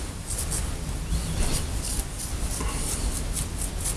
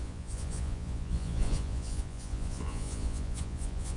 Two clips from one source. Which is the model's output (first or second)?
second